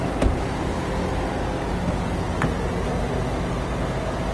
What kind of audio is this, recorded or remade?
recorded